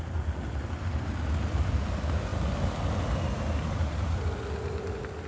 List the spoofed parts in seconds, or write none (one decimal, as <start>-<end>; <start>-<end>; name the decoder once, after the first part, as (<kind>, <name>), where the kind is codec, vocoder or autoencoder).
none